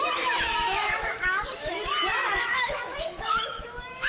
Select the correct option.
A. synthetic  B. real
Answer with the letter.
A